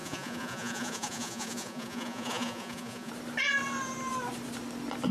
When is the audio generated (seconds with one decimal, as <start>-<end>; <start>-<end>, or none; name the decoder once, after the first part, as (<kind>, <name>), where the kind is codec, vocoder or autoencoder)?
0.0-3.1 (vocoder, Vocos)

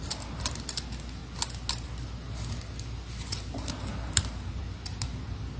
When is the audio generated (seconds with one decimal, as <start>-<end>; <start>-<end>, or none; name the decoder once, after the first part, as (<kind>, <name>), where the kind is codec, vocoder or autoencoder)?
none